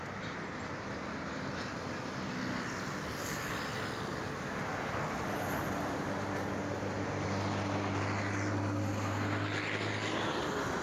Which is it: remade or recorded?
recorded